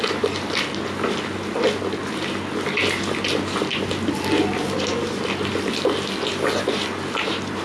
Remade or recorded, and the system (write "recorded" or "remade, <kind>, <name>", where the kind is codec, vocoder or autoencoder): recorded